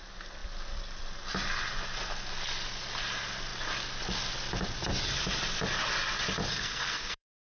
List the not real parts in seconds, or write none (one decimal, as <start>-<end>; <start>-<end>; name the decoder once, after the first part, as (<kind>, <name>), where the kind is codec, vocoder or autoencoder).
6.5-7.5 (codec, SNAC)